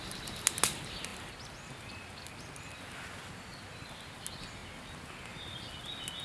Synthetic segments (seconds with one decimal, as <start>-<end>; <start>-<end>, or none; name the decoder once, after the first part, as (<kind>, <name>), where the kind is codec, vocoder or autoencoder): none